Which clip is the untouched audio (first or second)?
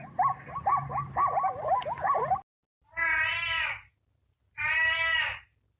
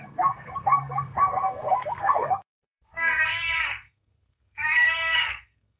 first